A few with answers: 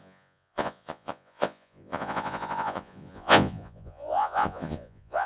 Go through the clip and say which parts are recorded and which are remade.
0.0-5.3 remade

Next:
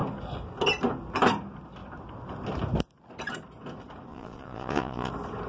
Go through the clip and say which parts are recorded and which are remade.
0.0-4.1 recorded; 4.1-5.1 remade; 5.1-5.5 recorded

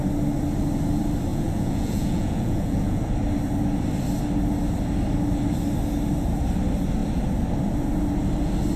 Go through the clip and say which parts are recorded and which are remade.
0.0-1.3 recorded; 1.3-3.0 remade; 3.0-8.8 recorded

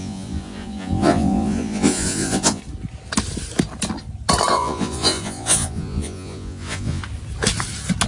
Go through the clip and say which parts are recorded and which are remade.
0.0-2.6 remade; 2.6-4.5 recorded; 4.5-7.0 remade; 7.0-8.1 recorded

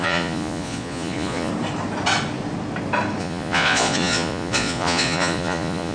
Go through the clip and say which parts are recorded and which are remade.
0.0-1.5 remade; 1.5-3.2 recorded; 3.2-5.9 remade

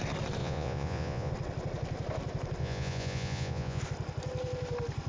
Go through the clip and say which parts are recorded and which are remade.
0.0-0.4 recorded; 0.4-1.3 remade; 1.3-2.6 recorded; 2.6-3.8 remade; 3.8-5.1 recorded

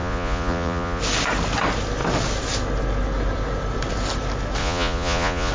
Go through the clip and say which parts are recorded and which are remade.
0.0-1.0 remade; 1.0-4.6 recorded; 4.6-5.5 remade

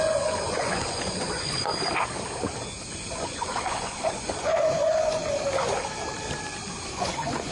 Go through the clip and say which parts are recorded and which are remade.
0.0-1.7 remade; 1.7-2.9 recorded; 2.9-5.2 remade; 5.2-6.9 recorded; 6.9-7.5 remade